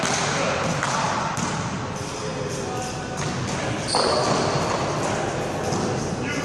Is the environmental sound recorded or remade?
recorded